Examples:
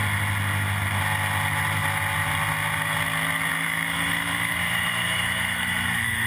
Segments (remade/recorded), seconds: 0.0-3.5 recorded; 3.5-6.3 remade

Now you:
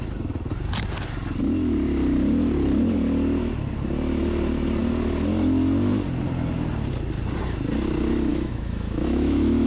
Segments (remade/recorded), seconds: 0.0-8.3 recorded; 8.3-9.7 remade

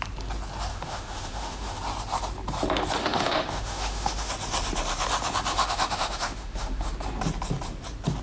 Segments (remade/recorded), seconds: 0.0-0.7 recorded; 0.7-1.8 remade; 1.8-3.0 recorded; 3.0-4.3 remade; 4.3-5.5 recorded; 5.5-6.9 remade; 6.9-8.2 recorded

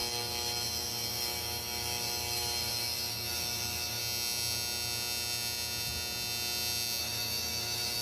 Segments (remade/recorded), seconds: 0.0-4.0 remade; 4.0-7.0 recorded; 7.0-8.0 remade

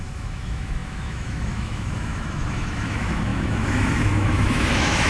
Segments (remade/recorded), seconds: 0.0-5.1 remade

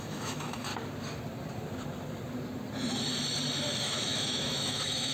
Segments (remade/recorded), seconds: 0.0-0.7 remade; 0.7-3.8 recorded; 3.8-5.1 remade

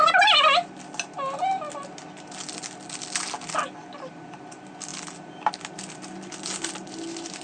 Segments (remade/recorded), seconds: 0.0-7.4 recorded